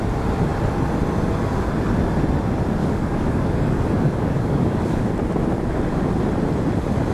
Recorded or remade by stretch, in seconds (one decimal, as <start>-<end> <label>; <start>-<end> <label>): 0.0-2.8 recorded; 2.8-5.1 remade; 5.1-7.1 recorded